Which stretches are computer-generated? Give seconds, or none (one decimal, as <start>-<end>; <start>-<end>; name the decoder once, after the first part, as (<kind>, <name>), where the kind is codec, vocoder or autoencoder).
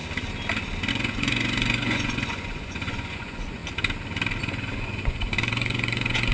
0.9-3.6 (vocoder, Vocos); 4.4-6.3